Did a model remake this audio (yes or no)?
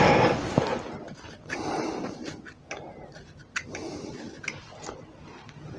no